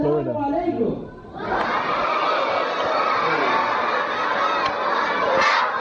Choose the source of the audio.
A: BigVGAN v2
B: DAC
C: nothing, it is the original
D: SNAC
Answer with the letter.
C